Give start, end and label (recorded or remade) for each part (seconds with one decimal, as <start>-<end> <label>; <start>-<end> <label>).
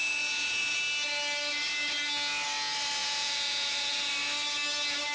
0.0-0.8 remade; 0.8-3.0 recorded; 3.0-4.1 remade; 4.1-5.1 recorded